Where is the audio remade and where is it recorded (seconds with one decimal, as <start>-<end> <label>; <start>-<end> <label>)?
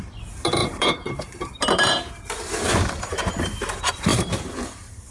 0.0-0.6 recorded; 0.6-3.4 remade; 3.4-4.1 recorded; 4.1-5.1 remade